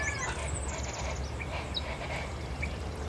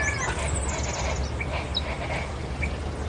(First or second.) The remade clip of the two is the first